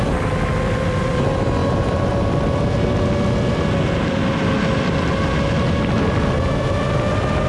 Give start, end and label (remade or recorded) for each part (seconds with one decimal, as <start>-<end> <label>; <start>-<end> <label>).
0.0-7.5 recorded